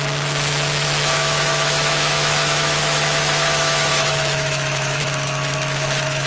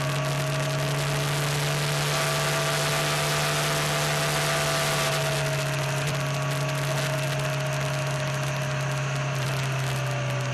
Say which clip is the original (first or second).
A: second